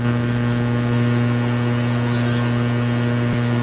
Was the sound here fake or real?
real